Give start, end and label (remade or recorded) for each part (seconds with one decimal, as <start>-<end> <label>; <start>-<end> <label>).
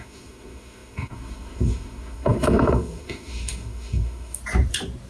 0.0-4.4 remade; 4.4-5.1 recorded